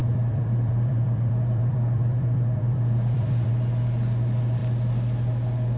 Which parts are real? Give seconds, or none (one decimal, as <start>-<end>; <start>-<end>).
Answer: 3.5-5.8

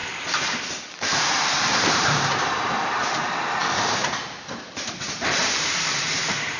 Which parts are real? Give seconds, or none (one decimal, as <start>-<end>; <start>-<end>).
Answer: 0.0-0.8; 4.0-4.8

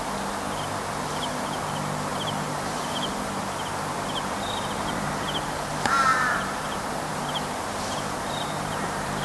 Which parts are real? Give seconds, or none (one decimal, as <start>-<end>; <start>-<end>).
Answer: 0.0-2.1; 5.5-6.1

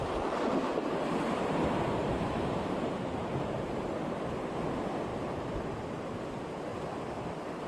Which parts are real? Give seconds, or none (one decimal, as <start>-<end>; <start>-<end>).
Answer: 0.0-2.0; 3.8-5.1; 6.2-7.7

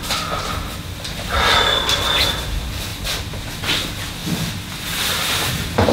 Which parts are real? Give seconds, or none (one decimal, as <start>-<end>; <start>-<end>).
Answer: 0.0-2.9; 3.5-5.9

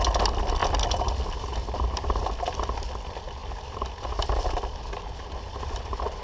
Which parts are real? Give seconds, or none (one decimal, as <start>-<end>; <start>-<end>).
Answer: 0.0-6.2